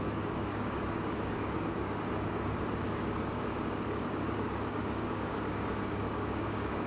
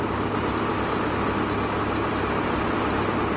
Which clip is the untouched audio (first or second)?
second